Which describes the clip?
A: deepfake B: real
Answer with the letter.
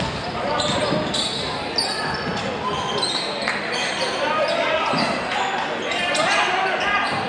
B